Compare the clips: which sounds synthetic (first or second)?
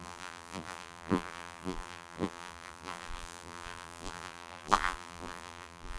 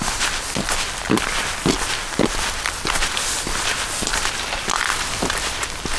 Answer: first